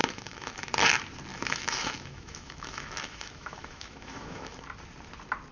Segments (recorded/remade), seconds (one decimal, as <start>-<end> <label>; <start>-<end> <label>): 0.0-0.7 remade; 0.7-1.3 recorded; 1.3-4.6 remade; 4.6-5.5 recorded